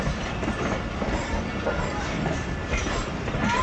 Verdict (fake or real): real